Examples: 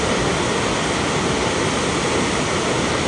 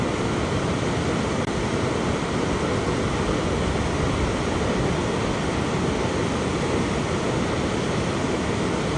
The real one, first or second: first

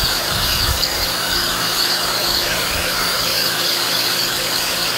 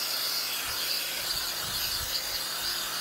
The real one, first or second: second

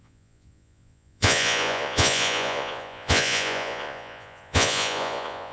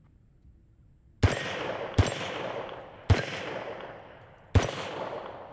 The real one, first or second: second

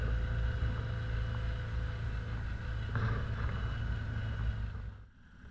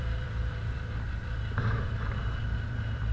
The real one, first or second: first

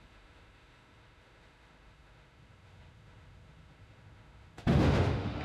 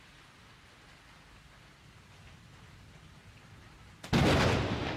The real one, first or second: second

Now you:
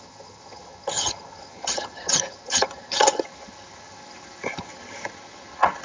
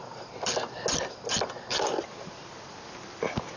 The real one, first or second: second